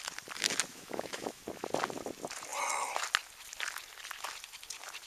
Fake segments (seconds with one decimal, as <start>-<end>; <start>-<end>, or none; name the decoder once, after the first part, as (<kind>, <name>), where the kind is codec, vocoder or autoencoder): 0.7-1.4 (autoencoder, DAC-VAE)